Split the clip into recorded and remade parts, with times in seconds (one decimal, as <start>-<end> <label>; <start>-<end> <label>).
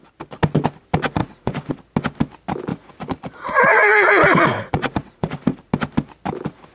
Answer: 0.0-1.2 recorded; 1.2-1.7 remade; 1.7-2.7 recorded; 2.7-5.7 remade; 5.7-6.7 recorded